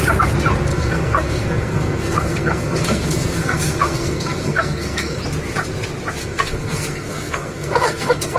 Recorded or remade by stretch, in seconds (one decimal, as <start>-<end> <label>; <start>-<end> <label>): 0.0-0.7 recorded; 0.7-5.2 remade; 5.2-6.2 recorded; 6.2-8.4 remade